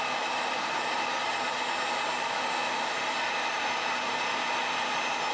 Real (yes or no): yes